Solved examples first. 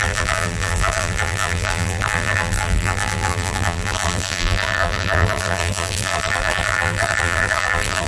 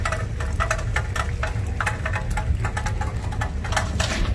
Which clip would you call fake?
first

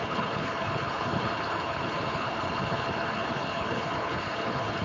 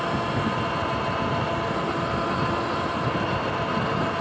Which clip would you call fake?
first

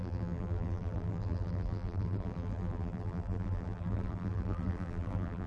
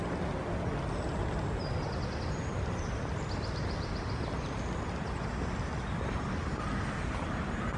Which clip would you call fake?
first